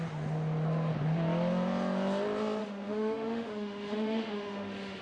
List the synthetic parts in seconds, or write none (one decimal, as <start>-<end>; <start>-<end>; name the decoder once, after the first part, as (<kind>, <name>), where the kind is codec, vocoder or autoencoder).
2.6-5.0 (autoencoder, DAC-VAE)